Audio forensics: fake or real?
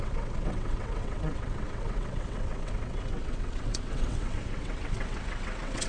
fake